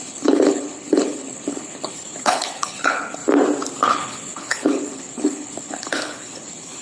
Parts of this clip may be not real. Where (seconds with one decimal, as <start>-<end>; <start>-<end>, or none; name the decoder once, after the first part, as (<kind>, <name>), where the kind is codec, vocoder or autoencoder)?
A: 0.0-3.2 (codec, HILCodec); 3.9-6.8